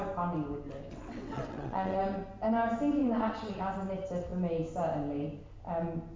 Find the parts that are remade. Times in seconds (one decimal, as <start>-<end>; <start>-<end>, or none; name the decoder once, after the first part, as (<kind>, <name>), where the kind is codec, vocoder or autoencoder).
0.9-2.0 (vocoder, WaveNeXt); 3.0-3.6